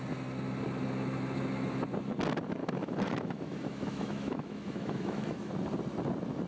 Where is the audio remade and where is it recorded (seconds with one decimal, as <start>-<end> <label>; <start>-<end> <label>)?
0.0-2.6 recorded; 2.6-5.5 remade; 5.5-6.5 recorded

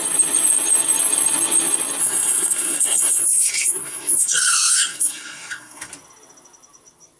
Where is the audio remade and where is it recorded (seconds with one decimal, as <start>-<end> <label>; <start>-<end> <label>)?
0.0-2.0 recorded; 2.0-5.9 remade; 5.9-7.2 recorded

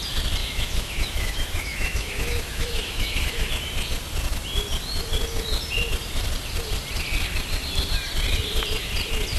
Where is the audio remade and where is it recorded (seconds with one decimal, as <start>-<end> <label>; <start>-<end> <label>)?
0.0-0.4 recorded; 0.4-3.5 remade; 3.5-9.4 recorded

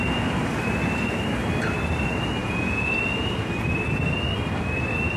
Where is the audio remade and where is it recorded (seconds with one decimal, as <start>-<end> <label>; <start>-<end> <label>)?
0.0-2.4 recorded; 2.4-2.9 remade; 2.9-5.2 recorded